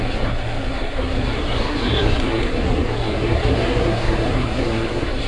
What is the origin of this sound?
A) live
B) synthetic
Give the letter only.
B